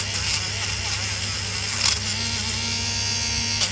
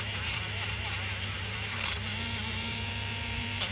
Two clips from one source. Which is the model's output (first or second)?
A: second